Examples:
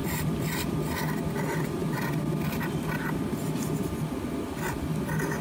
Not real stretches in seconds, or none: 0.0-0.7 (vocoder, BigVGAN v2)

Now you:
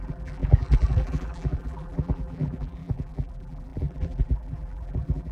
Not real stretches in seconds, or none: 0.0-5.3 (vocoder, BigVGAN v2)

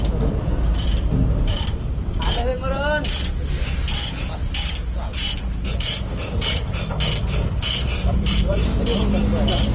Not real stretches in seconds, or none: 1.5-2.1 (vocoder, BigVGAN v2); 8.0-9.0

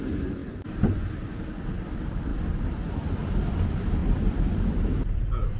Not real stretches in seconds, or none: 4.0-4.8 (vocoder, BigVGAN v2)

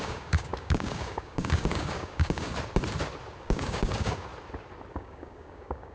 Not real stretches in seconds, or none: 0.0-2.5 (codec, DAC); 3.4-4.3; 4.9-5.9

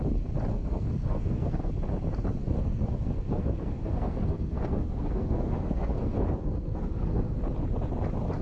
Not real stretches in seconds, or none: 0.5-1.7 (codec, SNAC); 2.4-7.4

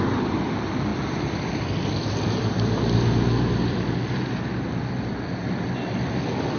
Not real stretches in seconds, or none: 0.0-6.6 (vocoder, BigVGAN v2)